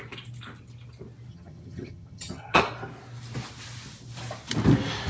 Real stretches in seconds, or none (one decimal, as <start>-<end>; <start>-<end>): 0.0-1.3; 2.6-5.1